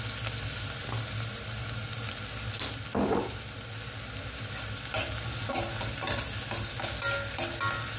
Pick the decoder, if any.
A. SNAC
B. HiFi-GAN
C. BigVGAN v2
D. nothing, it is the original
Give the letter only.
D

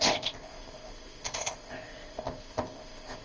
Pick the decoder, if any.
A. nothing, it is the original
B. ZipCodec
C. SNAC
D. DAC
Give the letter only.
B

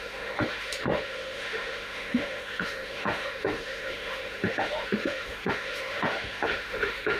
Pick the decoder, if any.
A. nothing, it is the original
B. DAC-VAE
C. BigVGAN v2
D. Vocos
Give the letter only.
B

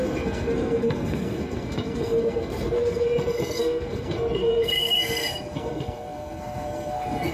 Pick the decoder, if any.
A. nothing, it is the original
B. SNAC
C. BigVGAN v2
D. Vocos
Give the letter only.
B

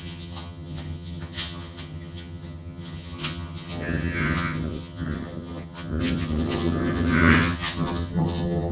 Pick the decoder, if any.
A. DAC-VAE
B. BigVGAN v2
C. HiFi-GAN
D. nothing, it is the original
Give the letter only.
C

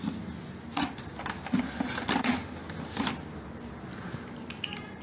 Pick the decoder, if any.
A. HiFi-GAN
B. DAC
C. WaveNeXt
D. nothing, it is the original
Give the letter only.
D